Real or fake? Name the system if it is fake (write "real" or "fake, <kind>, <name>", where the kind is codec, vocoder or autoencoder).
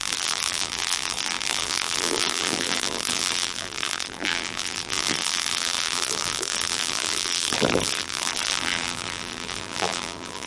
fake, vocoder, BigVGAN v2